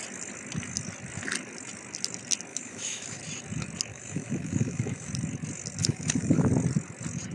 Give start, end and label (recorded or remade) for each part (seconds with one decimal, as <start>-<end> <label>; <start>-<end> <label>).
0.0-2.5 recorded; 2.5-3.2 remade; 3.2-3.9 recorded; 3.9-5.1 remade; 5.1-5.8 recorded; 5.8-6.5 remade; 6.5-7.3 recorded